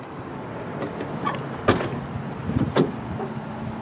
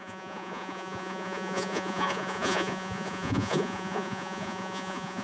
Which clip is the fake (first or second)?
second